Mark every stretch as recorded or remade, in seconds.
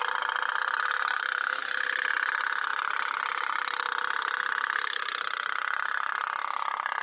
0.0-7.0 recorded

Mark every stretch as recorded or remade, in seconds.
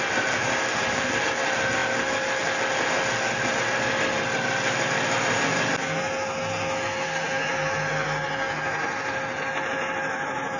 0.0-10.6 recorded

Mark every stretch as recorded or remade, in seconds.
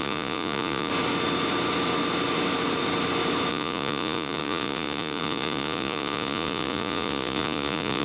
0.0-0.9 remade; 0.9-3.5 recorded; 3.5-8.0 remade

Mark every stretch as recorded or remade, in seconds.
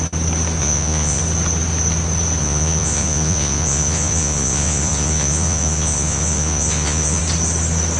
0.0-0.6 recorded; 0.6-1.2 remade; 1.2-2.4 recorded; 2.4-7.2 remade; 7.2-8.0 recorded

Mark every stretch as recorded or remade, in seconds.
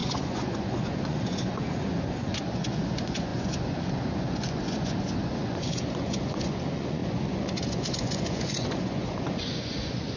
0.0-10.2 remade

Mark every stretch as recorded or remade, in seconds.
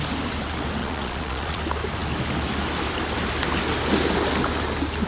0.0-0.8 recorded; 0.8-1.6 remade; 1.6-5.1 recorded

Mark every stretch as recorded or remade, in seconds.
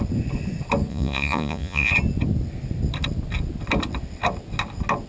0.0-0.9 recorded; 0.9-1.9 remade; 1.9-5.1 recorded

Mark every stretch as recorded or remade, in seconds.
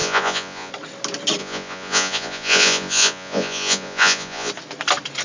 0.0-0.7 remade; 0.7-1.4 recorded; 1.4-4.5 remade; 4.5-5.2 recorded